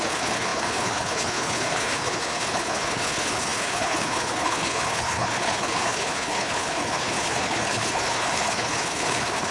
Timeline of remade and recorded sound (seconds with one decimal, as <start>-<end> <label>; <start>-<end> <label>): 0.0-9.5 remade